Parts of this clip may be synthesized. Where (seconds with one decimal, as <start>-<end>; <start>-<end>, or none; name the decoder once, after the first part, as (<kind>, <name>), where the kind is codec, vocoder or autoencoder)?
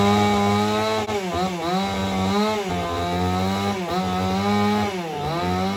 none